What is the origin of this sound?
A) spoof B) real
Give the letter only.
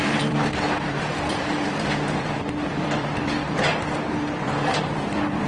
A